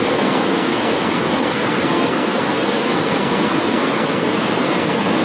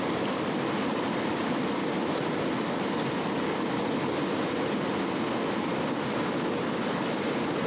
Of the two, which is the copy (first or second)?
first